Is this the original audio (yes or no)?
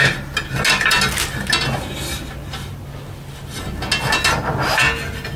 yes